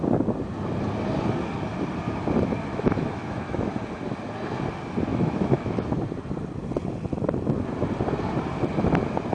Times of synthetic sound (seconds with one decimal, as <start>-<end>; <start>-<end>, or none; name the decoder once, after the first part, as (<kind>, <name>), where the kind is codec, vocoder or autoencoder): 2.7-3.7 (autoencoder, DAC-VAE); 5.1-5.9